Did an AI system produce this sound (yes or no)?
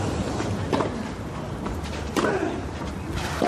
no